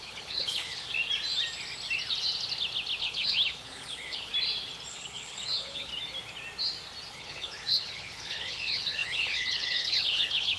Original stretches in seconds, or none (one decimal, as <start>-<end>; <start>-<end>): 0.9-3.0; 4.3-4.9; 5.9-7.1